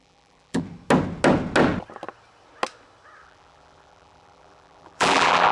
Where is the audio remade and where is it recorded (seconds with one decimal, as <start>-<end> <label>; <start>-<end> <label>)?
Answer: 0.0-0.6 remade; 0.6-3.2 recorded; 3.2-5.5 remade